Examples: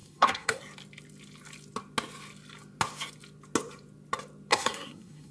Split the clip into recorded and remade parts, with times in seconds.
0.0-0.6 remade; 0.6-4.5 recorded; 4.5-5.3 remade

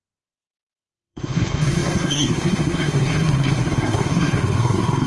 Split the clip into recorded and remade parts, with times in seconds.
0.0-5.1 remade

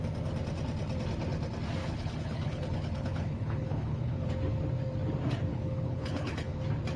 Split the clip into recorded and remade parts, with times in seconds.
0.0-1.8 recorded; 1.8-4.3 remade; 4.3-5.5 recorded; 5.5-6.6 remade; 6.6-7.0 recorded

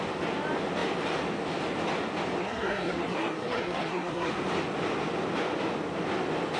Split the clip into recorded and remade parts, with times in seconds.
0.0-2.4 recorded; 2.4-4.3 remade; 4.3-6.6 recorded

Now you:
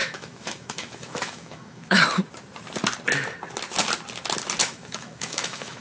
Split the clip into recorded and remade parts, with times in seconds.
0.0-2.0 remade; 2.0-4.6 recorded; 4.6-5.8 remade

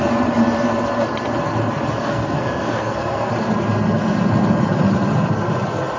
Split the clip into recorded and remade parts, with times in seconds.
0.0-2.0 recorded; 2.0-3.3 remade; 3.3-6.0 recorded